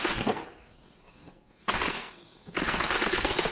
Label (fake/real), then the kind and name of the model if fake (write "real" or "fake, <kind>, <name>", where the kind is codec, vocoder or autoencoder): fake, codec, SNAC